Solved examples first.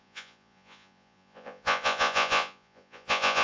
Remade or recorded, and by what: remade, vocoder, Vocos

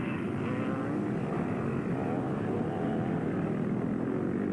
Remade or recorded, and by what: recorded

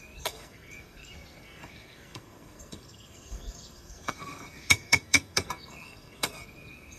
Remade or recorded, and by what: remade, codec, SNAC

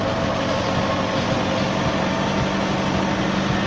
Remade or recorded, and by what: recorded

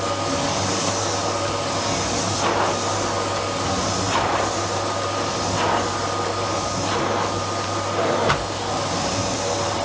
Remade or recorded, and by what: recorded